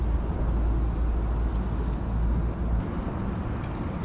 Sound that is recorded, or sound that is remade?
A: recorded